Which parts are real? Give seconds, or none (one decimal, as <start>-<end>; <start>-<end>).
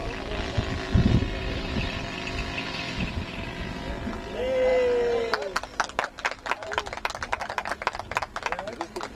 0.0-9.2